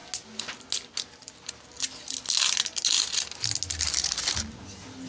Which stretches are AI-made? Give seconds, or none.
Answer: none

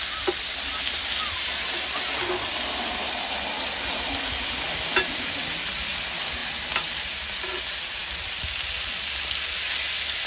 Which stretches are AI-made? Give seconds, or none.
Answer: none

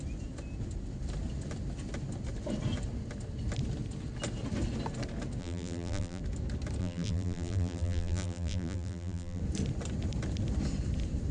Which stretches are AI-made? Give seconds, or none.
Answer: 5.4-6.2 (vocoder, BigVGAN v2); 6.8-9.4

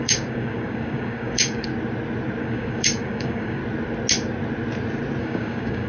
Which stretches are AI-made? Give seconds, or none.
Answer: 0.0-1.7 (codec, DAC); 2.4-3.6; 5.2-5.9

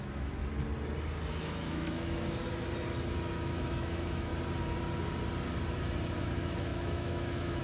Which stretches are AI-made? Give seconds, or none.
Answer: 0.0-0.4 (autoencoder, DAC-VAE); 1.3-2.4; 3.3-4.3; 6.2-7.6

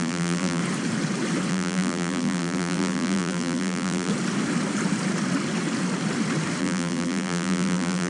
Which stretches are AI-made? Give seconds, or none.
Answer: 0.0-0.6 (vocoder, BigVGAN v2); 1.5-4.1; 6.6-8.1

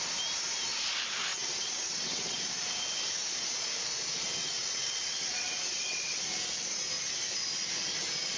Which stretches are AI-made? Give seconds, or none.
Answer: 1.3-2.4 (vocoder, WaveNeXt); 4.4-6.2